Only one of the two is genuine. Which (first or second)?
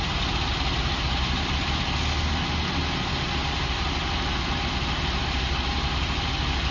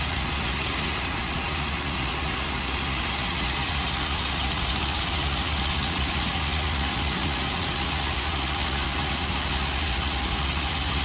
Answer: first